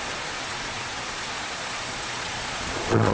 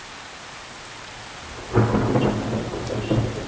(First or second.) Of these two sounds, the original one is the second